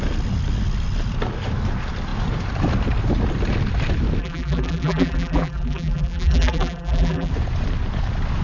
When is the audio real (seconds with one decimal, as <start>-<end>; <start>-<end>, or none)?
0.0-4.2; 7.3-8.4